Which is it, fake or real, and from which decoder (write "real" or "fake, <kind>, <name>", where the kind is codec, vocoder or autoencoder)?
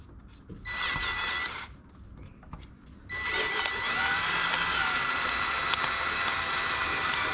real